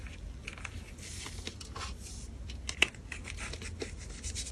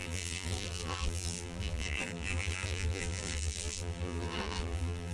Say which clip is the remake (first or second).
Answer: second